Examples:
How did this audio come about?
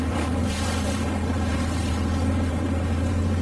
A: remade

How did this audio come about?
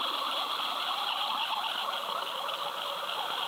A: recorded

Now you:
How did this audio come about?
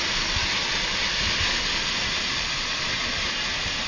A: recorded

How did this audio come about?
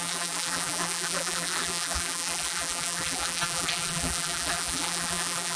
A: remade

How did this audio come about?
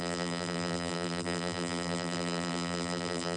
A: remade